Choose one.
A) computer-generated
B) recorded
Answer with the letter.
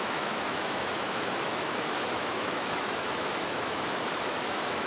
A